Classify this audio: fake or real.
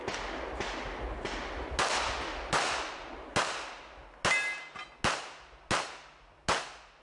real